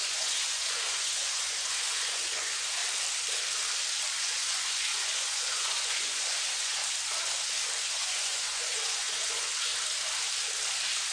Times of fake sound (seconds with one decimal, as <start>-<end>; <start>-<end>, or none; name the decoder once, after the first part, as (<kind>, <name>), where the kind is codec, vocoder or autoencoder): 0.0-2.8 (vocoder, Vocos); 4.2-6.8; 7.8-9.7